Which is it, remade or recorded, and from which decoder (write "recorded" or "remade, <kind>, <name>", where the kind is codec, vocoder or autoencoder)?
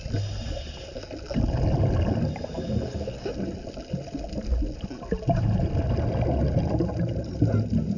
recorded